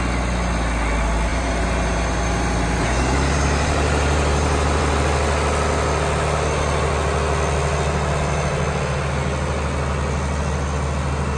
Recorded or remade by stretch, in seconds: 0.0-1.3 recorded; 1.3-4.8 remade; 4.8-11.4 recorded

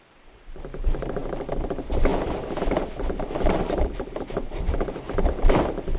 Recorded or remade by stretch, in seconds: 0.0-1.2 remade; 1.2-1.7 recorded; 1.7-2.1 remade; 2.1-3.6 recorded; 3.6-6.0 remade

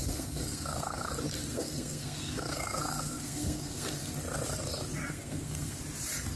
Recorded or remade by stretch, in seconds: 0.0-1.1 remade; 1.1-1.5 recorded; 1.5-4.1 remade; 4.1-5.0 recorded; 5.0-5.8 remade; 5.8-6.4 recorded